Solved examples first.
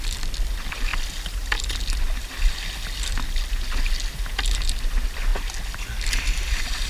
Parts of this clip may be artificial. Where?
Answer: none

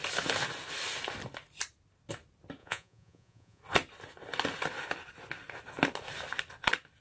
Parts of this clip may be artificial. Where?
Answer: 2.6-3.6 (vocoder, Vocos)

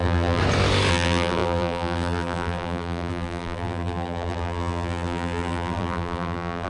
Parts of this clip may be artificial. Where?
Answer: 0.0-0.4 (vocoder, BigVGAN v2); 0.9-6.7

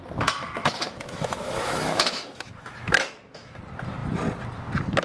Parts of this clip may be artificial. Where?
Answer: 0.6-3.6 (autoencoder, DAC-VAE)

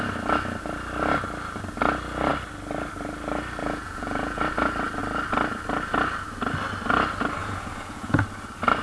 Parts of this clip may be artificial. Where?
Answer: 3.6-4.4 (vocoder, Vocos); 7.4-8.2

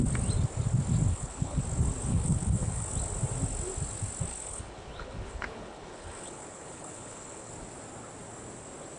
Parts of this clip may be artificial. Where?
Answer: 1.1-1.6 (codec, HILCodec); 2.1-2.9; 4.3-7.5